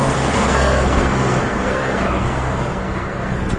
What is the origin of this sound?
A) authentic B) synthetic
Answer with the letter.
B